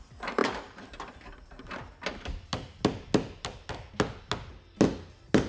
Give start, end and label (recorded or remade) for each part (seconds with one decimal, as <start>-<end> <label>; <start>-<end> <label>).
0.0-5.5 recorded